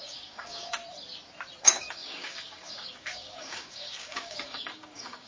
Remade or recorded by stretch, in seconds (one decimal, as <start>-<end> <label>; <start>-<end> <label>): 0.0-0.8 remade; 0.8-1.6 recorded; 1.6-5.3 remade